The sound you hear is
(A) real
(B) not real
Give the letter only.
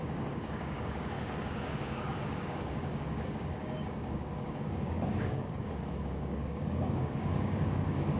B